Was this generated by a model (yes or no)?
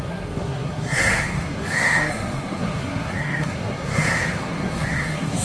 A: yes